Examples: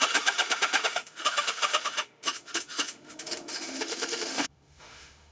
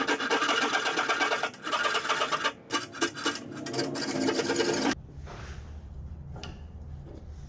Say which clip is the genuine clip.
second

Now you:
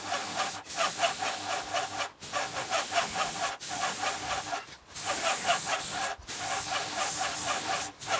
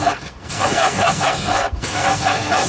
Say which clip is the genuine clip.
first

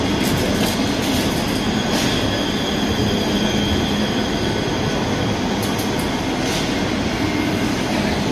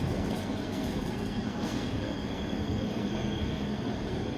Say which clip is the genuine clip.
first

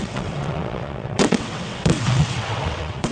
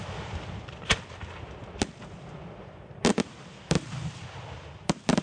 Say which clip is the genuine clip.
second